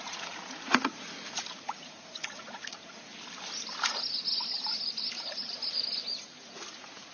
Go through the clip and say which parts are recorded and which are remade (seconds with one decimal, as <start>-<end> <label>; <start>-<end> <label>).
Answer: 0.0-3.1 remade; 3.1-6.2 recorded; 6.2-7.1 remade